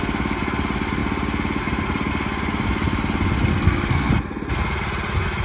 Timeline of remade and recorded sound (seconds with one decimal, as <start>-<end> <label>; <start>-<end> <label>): 0.0-3.5 recorded; 3.5-4.1 remade; 4.1-5.4 recorded